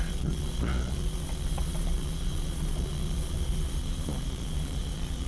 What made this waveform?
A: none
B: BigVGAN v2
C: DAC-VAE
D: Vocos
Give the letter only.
D